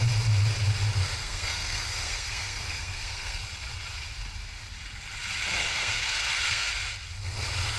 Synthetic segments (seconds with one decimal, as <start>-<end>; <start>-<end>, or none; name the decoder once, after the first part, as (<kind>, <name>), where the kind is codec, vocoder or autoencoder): 1.2-3.4 (codec, SNAC); 5.6-6.7